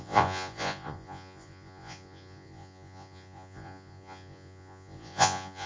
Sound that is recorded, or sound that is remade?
remade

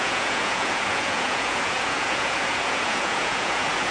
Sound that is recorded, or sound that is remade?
remade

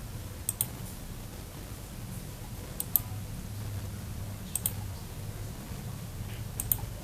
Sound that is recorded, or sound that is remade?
recorded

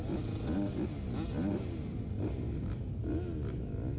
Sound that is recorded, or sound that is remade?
recorded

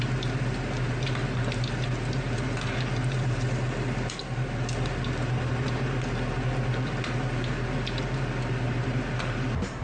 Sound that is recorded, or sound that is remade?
recorded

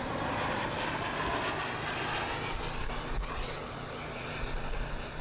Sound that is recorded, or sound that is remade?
recorded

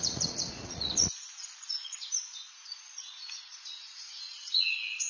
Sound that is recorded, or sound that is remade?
remade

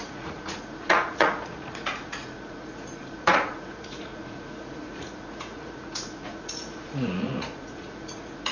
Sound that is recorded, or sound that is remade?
remade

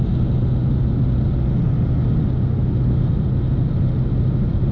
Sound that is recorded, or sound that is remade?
recorded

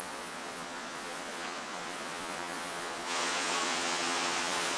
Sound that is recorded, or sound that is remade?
remade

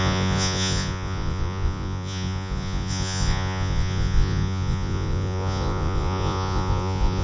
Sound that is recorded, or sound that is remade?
remade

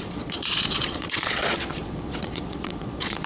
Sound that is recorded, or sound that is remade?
remade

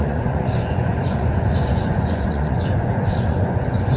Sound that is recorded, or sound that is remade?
remade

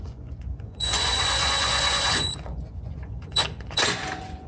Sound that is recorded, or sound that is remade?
remade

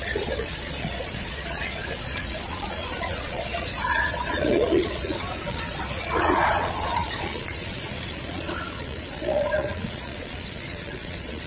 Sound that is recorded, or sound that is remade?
remade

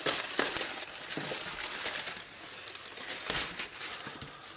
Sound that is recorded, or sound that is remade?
recorded